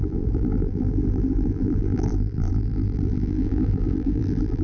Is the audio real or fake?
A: fake